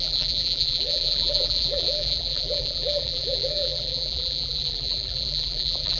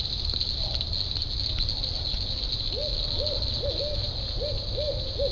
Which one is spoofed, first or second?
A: first